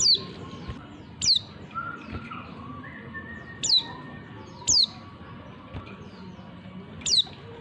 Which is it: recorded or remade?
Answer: recorded